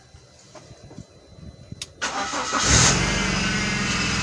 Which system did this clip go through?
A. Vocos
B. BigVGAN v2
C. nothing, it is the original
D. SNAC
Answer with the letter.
C